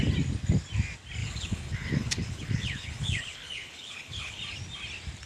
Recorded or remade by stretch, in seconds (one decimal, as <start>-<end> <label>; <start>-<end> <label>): 0.0-1.2 recorded; 1.2-4.4 remade; 4.4-5.3 recorded